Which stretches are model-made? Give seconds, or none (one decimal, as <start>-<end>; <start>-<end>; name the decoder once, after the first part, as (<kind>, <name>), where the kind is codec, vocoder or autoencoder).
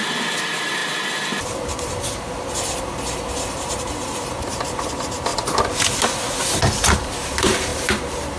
0.0-5.3 (vocoder, BigVGAN v2); 6.8-8.4